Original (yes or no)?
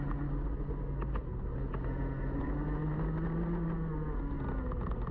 yes